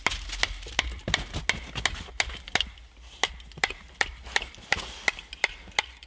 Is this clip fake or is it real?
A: real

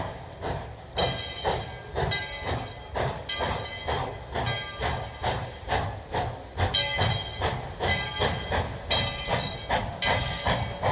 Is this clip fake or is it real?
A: real